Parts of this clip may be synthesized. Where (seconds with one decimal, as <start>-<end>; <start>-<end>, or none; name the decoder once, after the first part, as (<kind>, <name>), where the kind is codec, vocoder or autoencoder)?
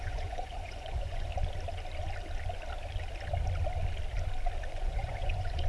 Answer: 0.0-1.3 (vocoder, Vocos); 4.7-5.7